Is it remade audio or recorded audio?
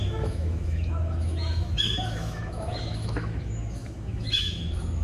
remade